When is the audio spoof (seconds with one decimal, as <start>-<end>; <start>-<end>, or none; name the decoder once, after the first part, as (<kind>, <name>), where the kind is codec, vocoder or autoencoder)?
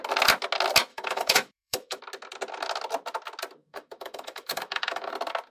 0.9-2.0 (autoencoder, DAC-VAE); 3.6-5.1